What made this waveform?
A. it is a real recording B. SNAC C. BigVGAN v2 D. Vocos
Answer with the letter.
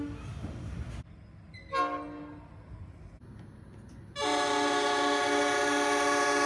A